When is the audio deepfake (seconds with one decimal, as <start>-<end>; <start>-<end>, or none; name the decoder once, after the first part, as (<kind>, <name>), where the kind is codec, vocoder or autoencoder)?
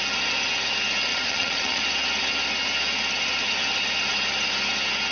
1.1-1.8 (vocoder, Vocos)